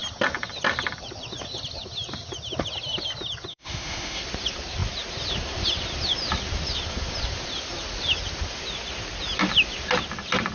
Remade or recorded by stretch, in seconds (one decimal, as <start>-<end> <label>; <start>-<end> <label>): 0.0-3.5 recorded; 3.5-4.2 remade; 4.2-10.5 recorded